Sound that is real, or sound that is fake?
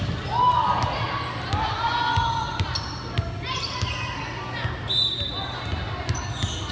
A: real